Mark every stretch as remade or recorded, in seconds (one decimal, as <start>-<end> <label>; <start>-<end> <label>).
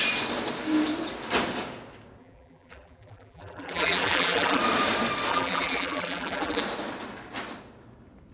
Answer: 0.0-2.2 recorded; 2.2-4.6 remade; 4.6-5.3 recorded; 5.3-6.6 remade; 6.6-8.3 recorded